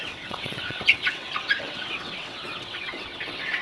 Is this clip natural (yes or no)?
no